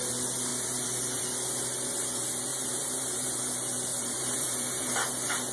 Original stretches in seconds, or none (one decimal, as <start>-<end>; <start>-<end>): 0.0-2.5; 3.4-3.9; 5.1-5.5

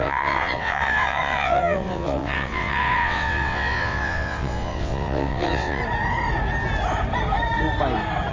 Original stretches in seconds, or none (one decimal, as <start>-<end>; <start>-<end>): 5.8-8.3